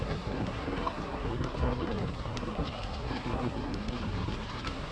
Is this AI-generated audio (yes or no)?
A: yes